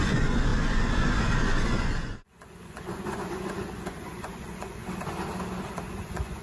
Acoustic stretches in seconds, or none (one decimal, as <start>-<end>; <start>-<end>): 4.8-5.7